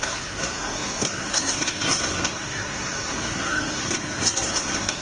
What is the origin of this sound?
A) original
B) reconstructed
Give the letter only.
B